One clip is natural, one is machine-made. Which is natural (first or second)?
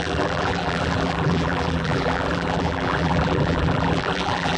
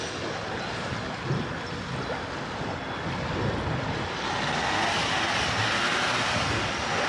second